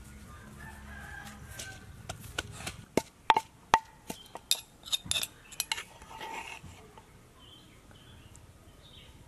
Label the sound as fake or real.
real